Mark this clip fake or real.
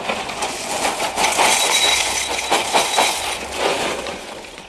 fake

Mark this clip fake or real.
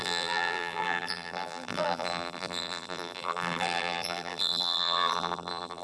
fake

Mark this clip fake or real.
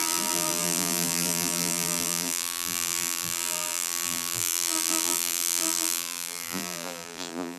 fake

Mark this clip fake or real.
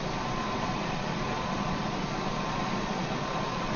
fake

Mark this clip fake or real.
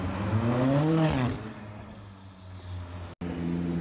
real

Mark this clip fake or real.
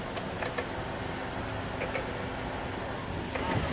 real